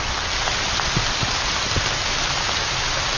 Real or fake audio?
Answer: real